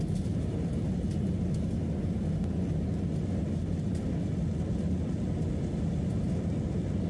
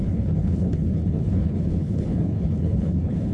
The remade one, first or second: second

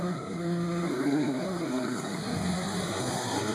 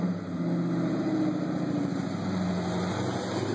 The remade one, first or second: first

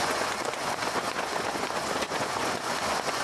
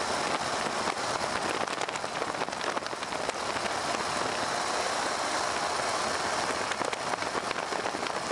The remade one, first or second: first